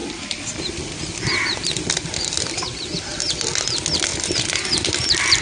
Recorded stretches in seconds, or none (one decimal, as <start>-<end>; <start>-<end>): 3.2-4.1; 4.9-5.4